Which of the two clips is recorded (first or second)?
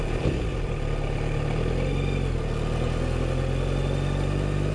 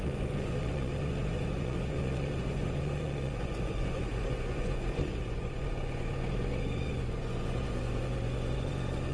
first